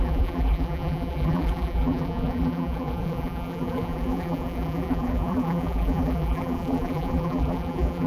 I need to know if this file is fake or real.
fake